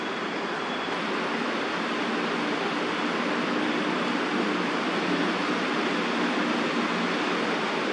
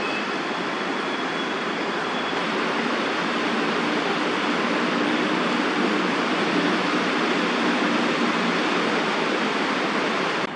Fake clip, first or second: second